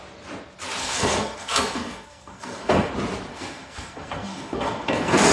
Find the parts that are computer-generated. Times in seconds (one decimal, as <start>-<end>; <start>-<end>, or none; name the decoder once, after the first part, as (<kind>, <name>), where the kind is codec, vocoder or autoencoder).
0.8-2.9 (codec, SNAC); 3.3-5.3

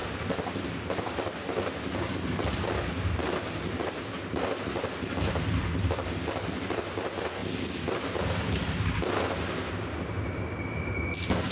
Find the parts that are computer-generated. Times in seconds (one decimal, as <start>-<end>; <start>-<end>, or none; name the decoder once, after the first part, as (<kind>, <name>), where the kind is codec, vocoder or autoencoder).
none